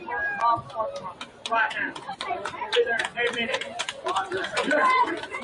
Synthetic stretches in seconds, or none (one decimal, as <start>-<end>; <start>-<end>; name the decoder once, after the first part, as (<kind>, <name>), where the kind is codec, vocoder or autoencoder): 1.4-5.4 (vocoder, Vocos)